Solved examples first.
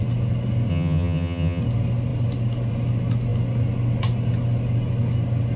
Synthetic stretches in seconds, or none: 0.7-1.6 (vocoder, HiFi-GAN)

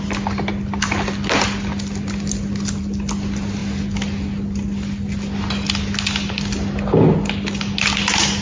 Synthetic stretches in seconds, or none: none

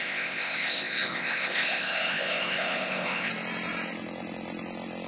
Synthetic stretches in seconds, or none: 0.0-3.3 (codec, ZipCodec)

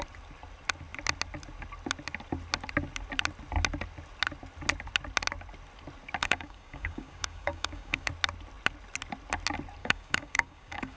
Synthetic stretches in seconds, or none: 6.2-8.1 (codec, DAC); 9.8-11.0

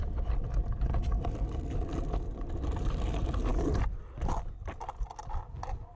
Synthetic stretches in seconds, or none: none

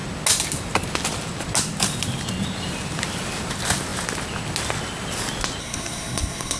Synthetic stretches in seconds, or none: 5.6-6.6 (codec, SNAC)

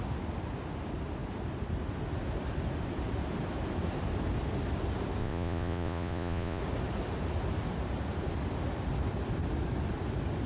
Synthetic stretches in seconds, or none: 5.2-6.6 (vocoder, Vocos)